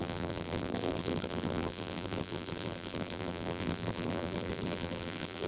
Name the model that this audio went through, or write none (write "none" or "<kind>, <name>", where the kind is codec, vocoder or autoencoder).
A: vocoder, BigVGAN v2